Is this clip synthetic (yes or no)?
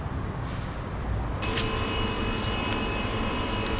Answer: yes